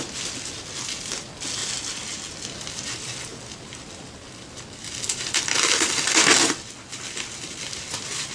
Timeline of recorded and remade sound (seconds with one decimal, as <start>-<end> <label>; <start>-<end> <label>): 0.0-8.3 recorded